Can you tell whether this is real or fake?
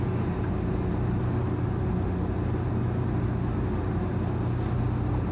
real